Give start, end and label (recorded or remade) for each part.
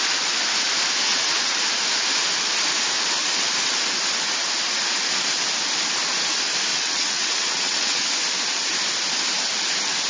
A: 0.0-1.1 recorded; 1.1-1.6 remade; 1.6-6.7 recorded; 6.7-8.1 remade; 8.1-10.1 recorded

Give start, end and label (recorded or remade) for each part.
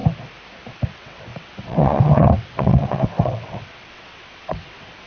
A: 0.0-0.7 recorded; 0.7-5.1 remade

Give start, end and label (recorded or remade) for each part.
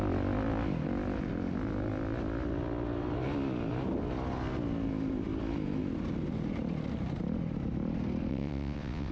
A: 0.0-8.3 recorded; 8.3-9.1 remade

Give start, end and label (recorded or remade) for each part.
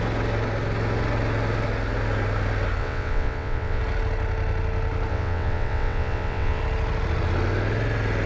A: 0.0-2.8 recorded; 2.8-3.8 remade; 3.8-5.1 recorded; 5.1-6.6 remade; 6.6-8.3 recorded